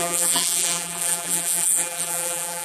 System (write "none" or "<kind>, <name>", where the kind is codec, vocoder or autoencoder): vocoder, BigVGAN v2